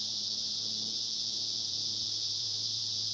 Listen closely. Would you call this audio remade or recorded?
remade